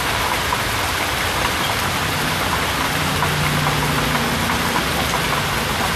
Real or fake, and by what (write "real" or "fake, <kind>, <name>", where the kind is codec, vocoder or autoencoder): real